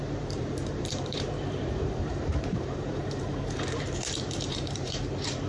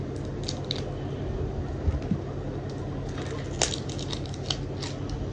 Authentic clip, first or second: second